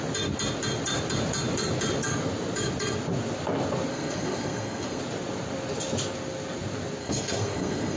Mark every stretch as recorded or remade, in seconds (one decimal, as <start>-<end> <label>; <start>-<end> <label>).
0.0-3.9 recorded; 3.9-5.0 remade; 5.0-7.0 recorded; 7.0-8.0 remade